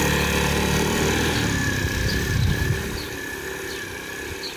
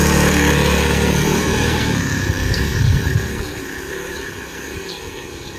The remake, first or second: second